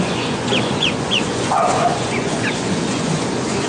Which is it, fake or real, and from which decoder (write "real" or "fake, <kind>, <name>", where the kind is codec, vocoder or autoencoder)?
fake, vocoder, Vocos